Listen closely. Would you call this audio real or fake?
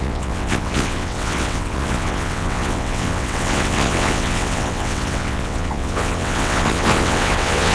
fake